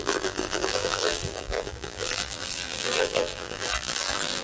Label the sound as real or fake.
fake